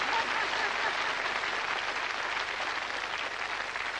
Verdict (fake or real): real